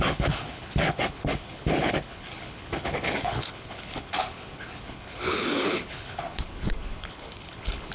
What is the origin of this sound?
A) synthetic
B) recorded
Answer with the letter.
A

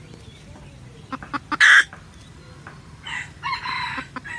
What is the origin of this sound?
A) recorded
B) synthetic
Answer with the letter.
A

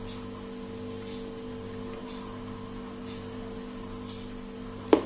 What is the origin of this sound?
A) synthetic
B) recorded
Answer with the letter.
B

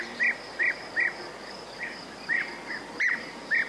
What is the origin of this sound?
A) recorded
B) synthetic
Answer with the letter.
A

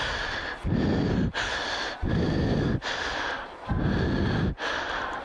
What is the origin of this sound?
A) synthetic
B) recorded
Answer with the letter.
B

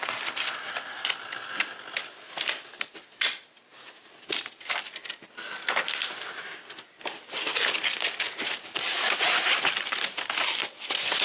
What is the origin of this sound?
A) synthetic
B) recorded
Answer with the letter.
B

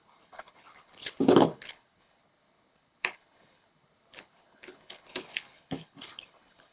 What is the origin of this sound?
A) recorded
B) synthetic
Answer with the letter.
B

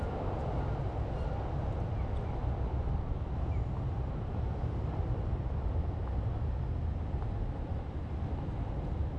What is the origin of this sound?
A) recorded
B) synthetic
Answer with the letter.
A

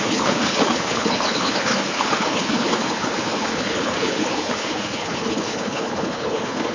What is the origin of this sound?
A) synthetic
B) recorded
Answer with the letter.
A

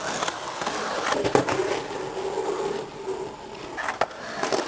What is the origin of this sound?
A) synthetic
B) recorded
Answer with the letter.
B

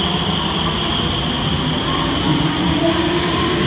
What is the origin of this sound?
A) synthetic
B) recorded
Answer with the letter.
B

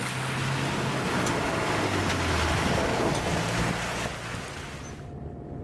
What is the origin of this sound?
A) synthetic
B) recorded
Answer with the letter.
B